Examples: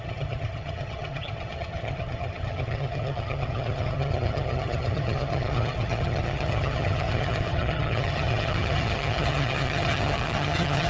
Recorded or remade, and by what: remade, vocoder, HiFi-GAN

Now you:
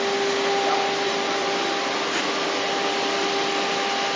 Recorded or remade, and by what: recorded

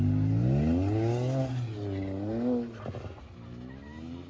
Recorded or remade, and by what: recorded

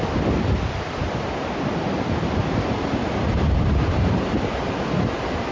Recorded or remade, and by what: recorded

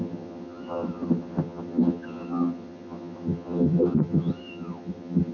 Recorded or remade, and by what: remade, vocoder, HiFi-GAN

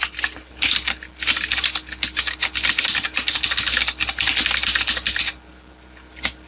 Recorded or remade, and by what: recorded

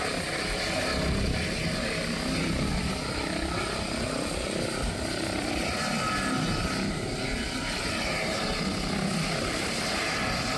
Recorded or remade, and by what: recorded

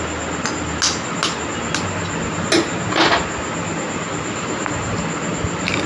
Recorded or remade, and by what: recorded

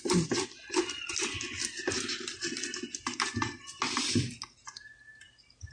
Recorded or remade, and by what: recorded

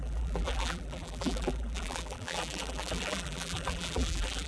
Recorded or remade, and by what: remade, vocoder, BigVGAN v2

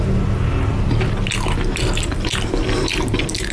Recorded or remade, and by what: recorded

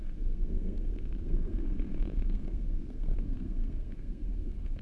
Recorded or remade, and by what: remade, codec, SNAC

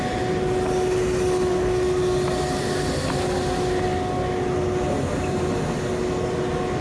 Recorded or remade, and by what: recorded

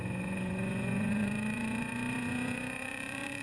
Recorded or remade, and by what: remade, vocoder, Vocos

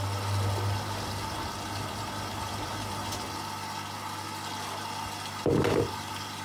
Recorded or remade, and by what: recorded